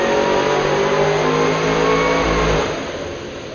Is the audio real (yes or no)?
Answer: yes